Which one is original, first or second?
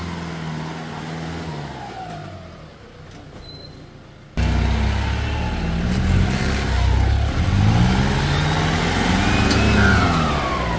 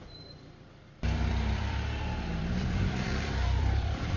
first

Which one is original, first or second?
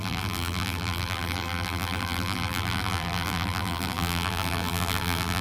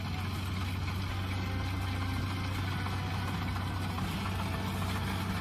second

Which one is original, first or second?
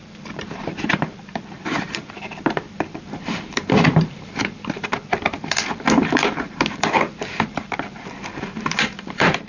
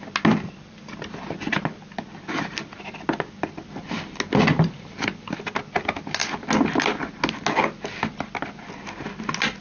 second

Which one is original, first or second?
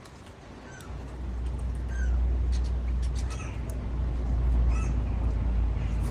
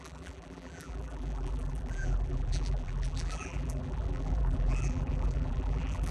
first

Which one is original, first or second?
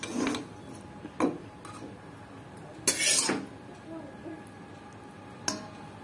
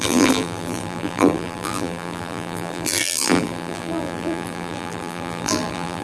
first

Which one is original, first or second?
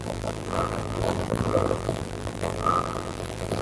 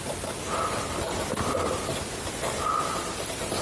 second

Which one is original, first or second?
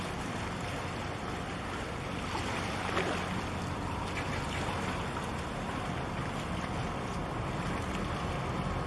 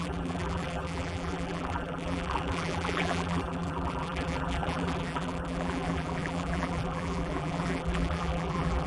first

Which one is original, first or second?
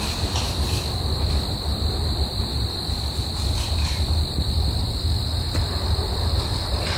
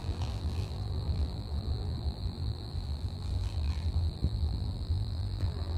first